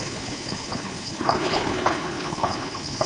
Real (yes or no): no